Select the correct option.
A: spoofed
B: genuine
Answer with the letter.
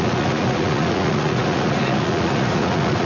A